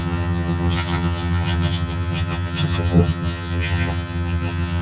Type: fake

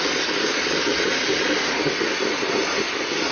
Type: real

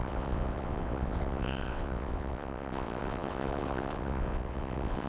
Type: fake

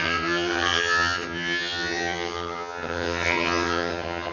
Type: fake